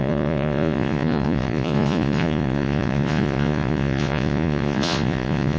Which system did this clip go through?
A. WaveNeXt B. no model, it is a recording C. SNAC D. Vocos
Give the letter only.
D